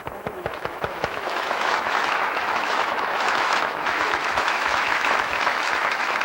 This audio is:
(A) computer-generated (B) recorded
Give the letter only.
A